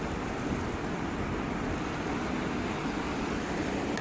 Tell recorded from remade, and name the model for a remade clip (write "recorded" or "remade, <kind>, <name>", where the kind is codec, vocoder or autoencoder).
recorded